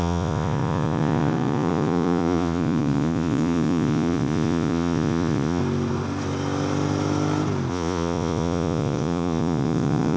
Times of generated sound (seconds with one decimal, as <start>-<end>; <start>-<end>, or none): 0.0-5.6; 7.7-10.2